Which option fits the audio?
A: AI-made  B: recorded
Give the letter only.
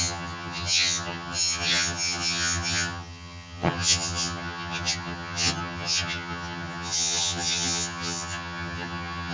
A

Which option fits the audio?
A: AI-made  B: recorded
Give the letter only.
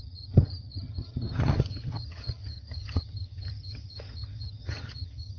A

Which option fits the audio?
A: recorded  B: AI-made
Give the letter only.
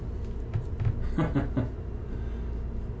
A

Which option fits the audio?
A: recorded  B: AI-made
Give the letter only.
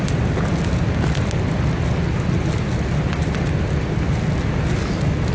A